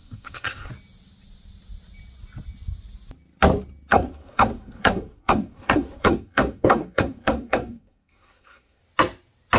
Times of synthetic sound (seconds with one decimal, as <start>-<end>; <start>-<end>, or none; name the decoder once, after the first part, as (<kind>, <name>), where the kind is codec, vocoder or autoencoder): 0.0-0.7 (codec, SNAC); 3.9-8.8